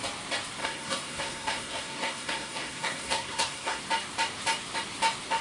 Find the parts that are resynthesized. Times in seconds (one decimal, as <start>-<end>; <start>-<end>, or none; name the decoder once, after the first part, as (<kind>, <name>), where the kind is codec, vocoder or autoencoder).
0.6-3.8 (codec, SNAC)